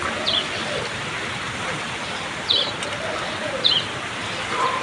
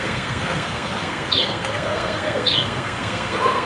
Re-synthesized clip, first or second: second